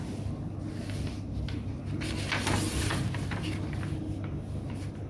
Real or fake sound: real